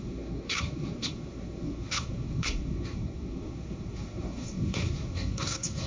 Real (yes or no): no